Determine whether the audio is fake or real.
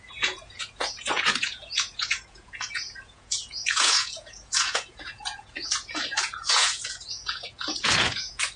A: fake